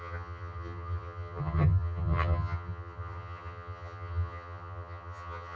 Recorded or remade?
remade